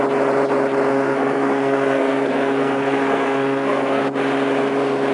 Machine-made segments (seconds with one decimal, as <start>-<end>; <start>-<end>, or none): 0.9-4.0